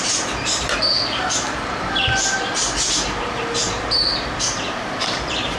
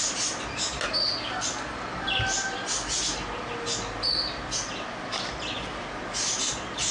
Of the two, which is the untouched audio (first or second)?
second